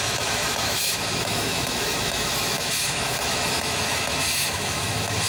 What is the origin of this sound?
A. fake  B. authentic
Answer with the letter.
A